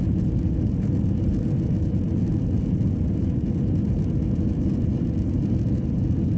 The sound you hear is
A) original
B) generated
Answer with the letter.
A